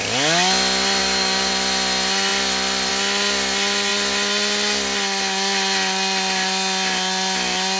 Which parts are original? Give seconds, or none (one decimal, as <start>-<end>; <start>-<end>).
0.0-1.0; 1.5-7.8